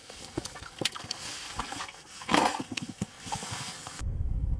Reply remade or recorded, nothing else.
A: remade